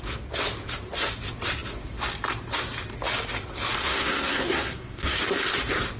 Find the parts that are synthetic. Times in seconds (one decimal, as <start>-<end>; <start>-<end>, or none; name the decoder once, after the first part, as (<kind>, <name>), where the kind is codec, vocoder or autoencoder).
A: 3.8-5.2 (codec, SNAC)